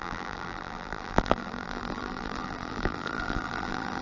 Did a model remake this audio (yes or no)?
yes